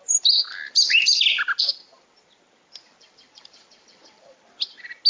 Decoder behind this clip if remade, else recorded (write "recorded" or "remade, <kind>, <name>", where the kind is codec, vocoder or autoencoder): recorded